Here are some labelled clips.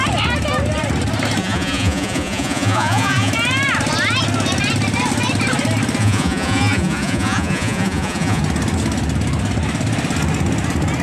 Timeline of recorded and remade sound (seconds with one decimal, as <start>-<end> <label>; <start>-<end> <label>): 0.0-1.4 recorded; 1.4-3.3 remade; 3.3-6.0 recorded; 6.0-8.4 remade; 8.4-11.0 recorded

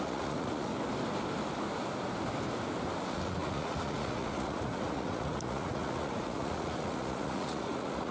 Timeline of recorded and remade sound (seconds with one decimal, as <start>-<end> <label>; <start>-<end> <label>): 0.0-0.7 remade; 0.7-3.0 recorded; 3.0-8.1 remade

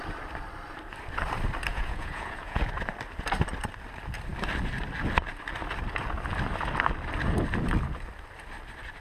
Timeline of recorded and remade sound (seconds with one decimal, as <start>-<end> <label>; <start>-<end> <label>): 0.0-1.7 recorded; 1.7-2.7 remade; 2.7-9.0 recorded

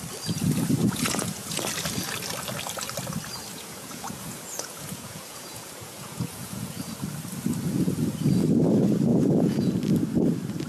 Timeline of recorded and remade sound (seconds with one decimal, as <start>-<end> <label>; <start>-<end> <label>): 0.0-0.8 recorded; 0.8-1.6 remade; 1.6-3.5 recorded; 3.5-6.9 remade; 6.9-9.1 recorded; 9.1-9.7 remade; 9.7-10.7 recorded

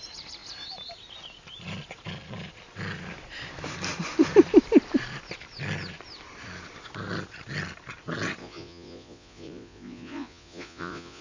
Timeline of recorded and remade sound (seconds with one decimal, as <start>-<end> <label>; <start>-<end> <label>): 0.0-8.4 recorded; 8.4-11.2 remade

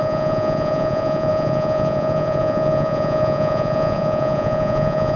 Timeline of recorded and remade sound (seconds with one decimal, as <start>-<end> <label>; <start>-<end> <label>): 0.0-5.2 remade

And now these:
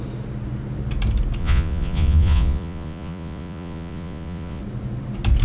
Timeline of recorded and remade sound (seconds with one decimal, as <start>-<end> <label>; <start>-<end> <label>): 0.0-1.4 recorded; 1.4-4.6 remade; 4.6-5.4 recorded

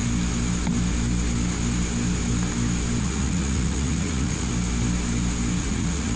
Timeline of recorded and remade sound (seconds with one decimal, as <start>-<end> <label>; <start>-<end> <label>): 0.0-3.0 recorded; 3.0-4.5 remade; 4.5-5.6 recorded; 5.6-6.2 remade